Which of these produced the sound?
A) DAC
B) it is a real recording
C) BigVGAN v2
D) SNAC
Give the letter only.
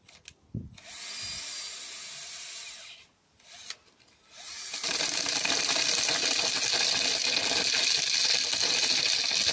B